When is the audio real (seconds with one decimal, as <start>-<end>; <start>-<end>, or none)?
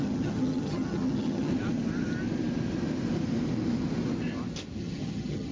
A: 1.5-4.8